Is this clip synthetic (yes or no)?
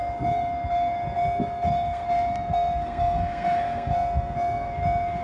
yes